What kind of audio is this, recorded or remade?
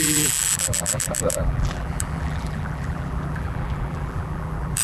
remade